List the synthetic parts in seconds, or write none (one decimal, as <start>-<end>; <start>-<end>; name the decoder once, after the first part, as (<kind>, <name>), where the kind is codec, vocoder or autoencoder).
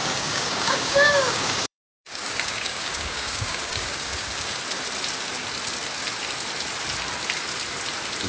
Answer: 0.0-4.6 (codec, DAC)